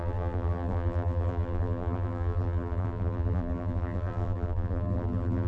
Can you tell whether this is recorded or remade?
remade